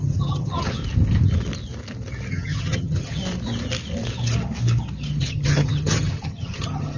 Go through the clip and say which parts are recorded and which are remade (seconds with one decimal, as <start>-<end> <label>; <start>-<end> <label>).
0.0-0.8 remade; 0.8-2.3 recorded; 2.3-3.2 remade; 3.2-5.2 recorded; 5.2-7.0 remade